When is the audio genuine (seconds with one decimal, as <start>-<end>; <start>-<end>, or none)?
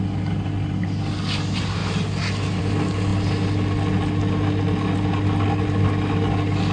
0.0-6.7